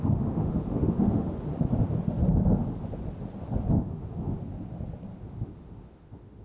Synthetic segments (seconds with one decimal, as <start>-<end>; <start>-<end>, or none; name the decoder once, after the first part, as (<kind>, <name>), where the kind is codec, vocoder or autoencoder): 0.0-1.5 (autoencoder, DAC-VAE); 3.7-4.4; 5.2-6.4